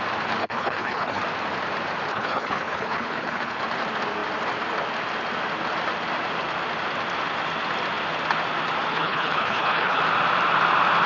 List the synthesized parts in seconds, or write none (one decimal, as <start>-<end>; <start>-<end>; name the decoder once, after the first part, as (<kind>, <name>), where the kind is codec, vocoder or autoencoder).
0.4-1.2 (codec, HILCodec); 2.1-3.6; 8.9-10.0